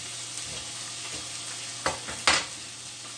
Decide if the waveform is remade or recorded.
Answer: recorded